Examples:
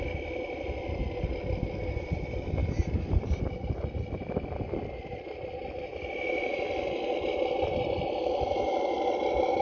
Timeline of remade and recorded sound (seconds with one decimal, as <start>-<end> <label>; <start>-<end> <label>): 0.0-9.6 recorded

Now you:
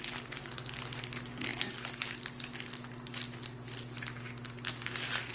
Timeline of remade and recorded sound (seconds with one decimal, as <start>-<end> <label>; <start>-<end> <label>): 0.0-5.3 recorded

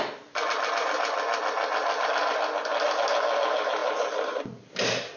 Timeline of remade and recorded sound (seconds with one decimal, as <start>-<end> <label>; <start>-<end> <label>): 0.0-5.2 recorded